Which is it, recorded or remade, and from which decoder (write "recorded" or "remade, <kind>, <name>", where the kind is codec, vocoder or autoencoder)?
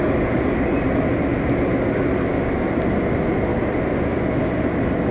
recorded